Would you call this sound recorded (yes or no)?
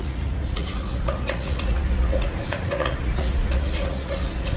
no